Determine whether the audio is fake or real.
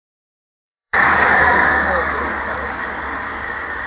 fake